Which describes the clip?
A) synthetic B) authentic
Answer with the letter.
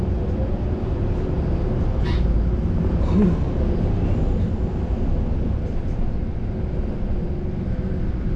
B